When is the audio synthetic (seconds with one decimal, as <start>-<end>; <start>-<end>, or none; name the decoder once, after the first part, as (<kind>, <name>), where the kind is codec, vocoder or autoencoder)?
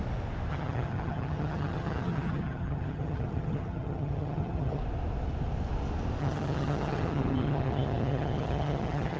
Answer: 0.5-4.8 (vocoder, HiFi-GAN); 6.2-9.2